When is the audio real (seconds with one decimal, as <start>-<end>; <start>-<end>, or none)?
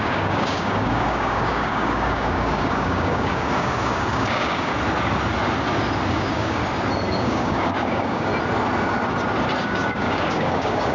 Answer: 4.7-6.1; 6.6-7.1; 8.3-9.6